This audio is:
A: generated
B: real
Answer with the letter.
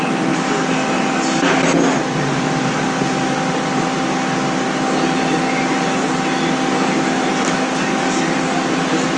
B